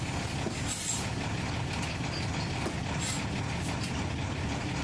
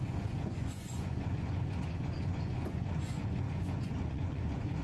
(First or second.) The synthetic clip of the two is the second